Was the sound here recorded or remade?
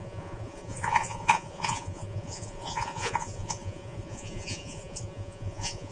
remade